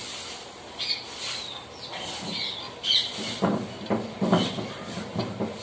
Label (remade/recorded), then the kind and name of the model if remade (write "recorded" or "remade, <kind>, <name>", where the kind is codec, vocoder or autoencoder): recorded